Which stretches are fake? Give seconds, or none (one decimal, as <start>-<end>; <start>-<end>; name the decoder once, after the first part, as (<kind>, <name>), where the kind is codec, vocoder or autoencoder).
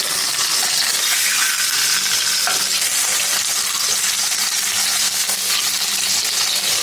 5.0-5.5 (codec, SNAC)